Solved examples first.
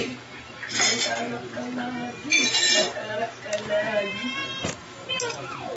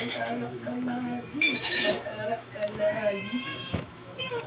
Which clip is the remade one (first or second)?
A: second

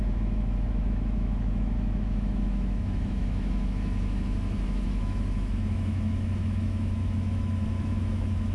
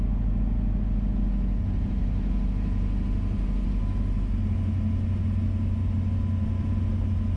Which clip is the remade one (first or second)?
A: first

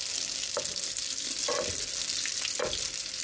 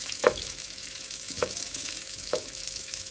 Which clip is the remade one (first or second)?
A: second